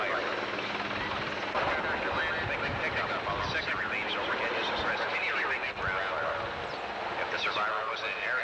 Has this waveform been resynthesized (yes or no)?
no